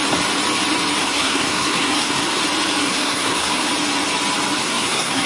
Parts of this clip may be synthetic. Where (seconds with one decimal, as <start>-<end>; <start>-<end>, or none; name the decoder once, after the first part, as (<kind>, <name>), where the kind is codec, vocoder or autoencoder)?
1.0-2.4 (codec, SNAC); 2.8-3.7; 4.6-5.3